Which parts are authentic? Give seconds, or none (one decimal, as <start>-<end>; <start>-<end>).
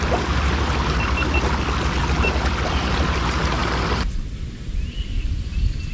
0.0-5.9